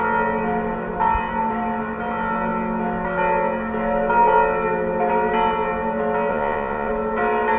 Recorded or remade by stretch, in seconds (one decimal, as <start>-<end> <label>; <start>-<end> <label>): 0.0-6.3 recorded; 6.3-6.9 remade; 6.9-7.6 recorded